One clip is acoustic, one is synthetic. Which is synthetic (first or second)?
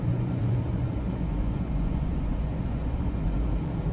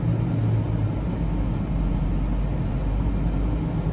first